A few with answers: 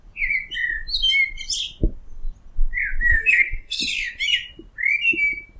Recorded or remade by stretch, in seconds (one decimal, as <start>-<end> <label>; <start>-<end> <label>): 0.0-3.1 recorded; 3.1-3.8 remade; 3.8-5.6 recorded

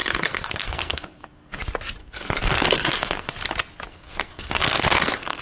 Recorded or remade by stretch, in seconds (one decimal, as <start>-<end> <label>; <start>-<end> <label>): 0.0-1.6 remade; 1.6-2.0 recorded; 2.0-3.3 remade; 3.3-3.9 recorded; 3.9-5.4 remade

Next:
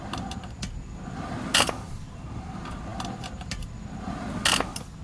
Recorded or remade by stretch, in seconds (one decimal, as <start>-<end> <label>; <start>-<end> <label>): 0.0-5.0 recorded